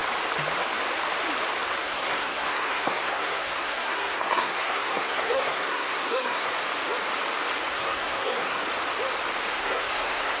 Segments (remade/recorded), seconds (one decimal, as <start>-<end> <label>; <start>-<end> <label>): 0.0-1.8 recorded; 1.8-6.5 remade; 6.5-7.7 recorded; 7.7-8.6 remade; 8.6-9.5 recorded; 9.5-10.4 remade